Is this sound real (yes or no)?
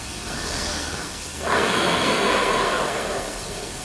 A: no